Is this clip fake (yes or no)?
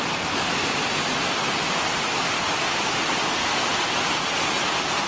no